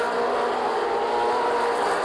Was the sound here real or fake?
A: real